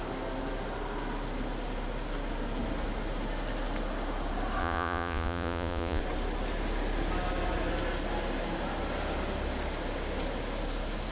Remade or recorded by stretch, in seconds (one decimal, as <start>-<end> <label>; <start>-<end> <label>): 0.0-4.6 recorded; 4.6-6.0 remade; 6.0-11.1 recorded